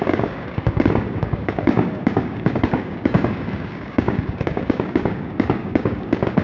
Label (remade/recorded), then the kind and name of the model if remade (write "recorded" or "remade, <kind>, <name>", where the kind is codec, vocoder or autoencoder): remade, codec, DAC